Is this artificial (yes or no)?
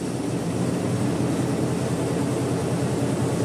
no